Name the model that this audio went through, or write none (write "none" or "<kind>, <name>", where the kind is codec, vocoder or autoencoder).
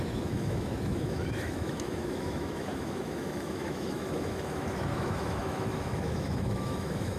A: autoencoder, DAC-VAE